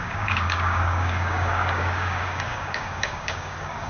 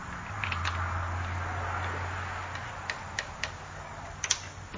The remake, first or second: first